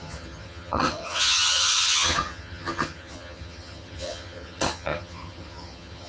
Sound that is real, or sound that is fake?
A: fake